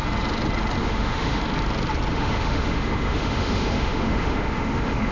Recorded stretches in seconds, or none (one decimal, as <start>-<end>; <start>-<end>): 0.0-0.8; 1.4-2.1